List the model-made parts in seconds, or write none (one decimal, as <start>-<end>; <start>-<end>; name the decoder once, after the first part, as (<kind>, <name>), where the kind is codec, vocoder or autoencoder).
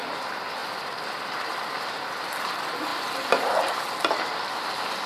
2.9-3.7 (vocoder, BigVGAN v2)